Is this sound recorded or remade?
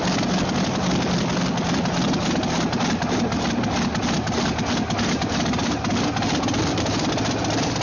recorded